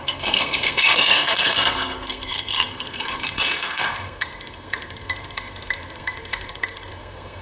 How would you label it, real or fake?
fake